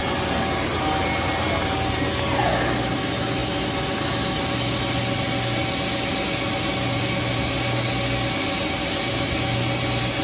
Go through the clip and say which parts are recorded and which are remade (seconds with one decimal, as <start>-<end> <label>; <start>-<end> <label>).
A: 0.0-10.2 recorded